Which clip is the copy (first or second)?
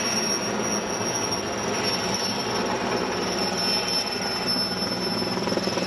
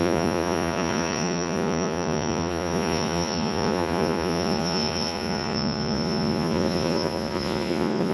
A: second